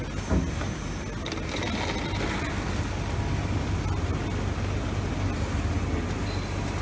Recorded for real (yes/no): yes